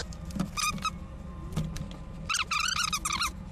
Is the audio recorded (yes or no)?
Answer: yes